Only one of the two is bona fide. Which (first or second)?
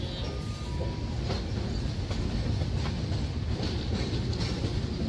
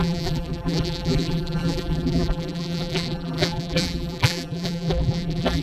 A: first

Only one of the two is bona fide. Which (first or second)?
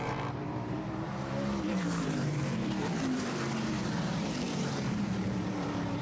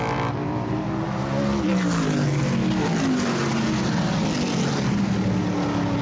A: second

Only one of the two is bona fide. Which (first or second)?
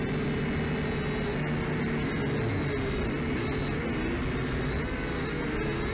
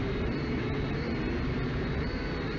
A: first